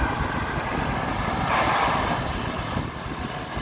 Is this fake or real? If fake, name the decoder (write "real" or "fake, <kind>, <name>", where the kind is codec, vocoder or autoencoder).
real